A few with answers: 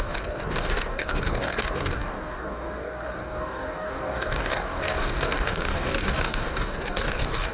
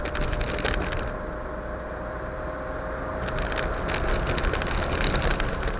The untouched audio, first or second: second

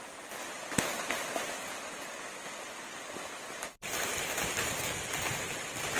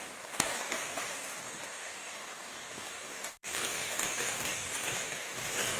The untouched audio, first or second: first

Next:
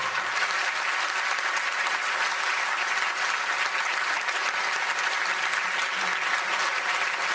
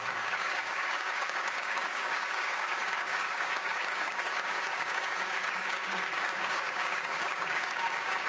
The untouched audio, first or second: first